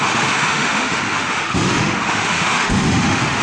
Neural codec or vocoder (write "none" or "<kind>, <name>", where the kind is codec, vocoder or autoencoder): autoencoder, DAC-VAE